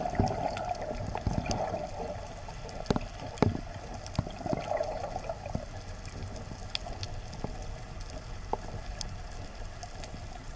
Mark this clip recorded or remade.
recorded